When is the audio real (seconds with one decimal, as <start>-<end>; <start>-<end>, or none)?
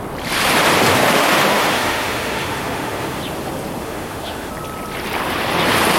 0.0-1.0; 3.2-3.8; 4.5-6.0